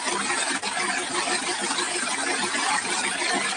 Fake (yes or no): no